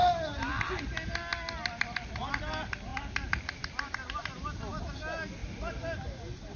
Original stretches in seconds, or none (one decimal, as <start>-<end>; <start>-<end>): 0.0-6.6